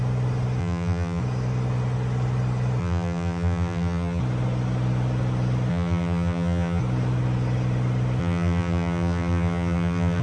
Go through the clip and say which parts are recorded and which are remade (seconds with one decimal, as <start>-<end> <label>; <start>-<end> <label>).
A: 0.0-0.6 recorded; 0.6-1.2 remade; 1.2-2.8 recorded; 2.8-4.2 remade; 4.2-5.7 recorded; 5.7-6.8 remade; 6.8-8.2 recorded; 8.2-10.2 remade